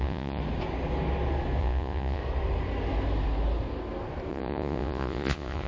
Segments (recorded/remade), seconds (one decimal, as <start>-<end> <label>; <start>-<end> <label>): 0.0-0.4 remade; 0.4-1.6 recorded; 1.6-2.2 remade; 2.2-4.3 recorded; 4.3-5.7 remade